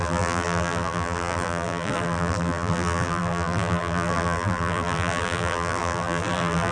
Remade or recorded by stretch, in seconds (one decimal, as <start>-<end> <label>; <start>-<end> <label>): 0.0-6.7 remade